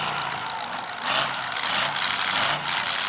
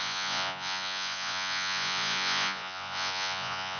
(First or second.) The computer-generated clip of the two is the second